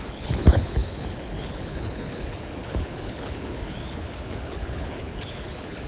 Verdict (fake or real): fake